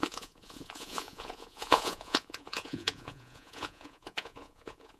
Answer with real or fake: fake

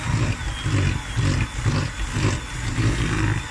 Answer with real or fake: real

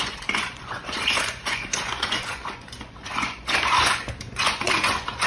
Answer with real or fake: fake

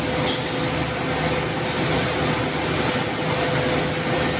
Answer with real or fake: real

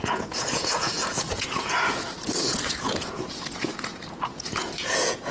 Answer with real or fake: fake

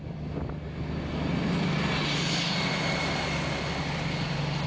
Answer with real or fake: real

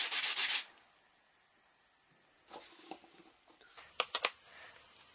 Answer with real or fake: real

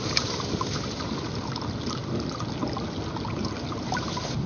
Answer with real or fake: real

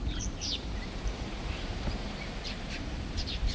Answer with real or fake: fake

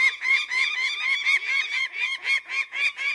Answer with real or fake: fake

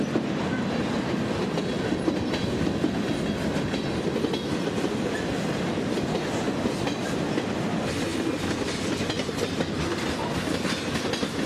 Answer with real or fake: real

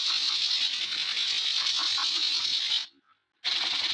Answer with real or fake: real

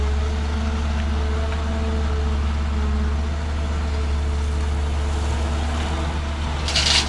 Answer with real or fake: real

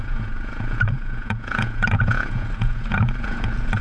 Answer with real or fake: fake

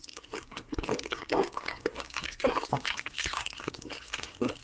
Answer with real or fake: fake